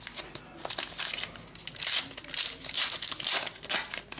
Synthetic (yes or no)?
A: no